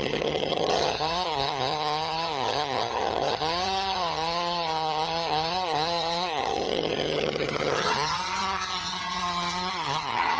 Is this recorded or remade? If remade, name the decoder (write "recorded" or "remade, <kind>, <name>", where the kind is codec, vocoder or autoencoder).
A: remade, vocoder, HiFi-GAN